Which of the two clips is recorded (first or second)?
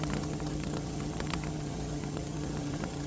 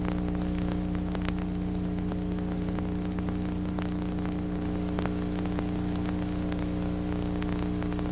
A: second